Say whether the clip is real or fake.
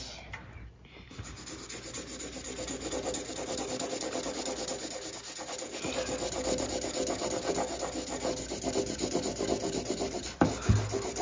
real